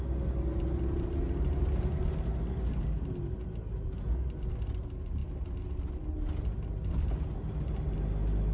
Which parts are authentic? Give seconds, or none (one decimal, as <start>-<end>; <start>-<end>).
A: 0.0-8.5